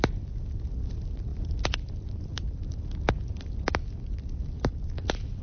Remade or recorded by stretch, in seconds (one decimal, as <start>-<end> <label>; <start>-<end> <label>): 0.0-5.4 recorded